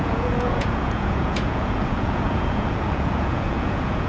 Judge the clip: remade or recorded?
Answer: remade